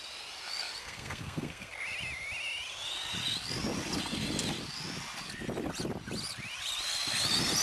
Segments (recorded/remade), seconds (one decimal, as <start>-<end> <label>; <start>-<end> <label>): 0.0-0.8 recorded; 0.8-1.7 remade; 1.7-7.6 recorded